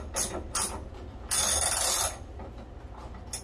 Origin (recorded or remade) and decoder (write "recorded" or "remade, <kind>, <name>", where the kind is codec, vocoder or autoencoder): recorded